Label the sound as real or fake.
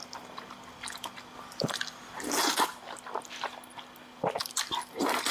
real